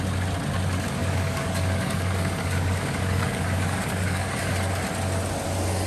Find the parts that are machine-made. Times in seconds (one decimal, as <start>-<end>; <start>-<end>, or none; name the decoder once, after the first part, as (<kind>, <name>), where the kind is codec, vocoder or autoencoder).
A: 1.0-4.5 (codec, DAC)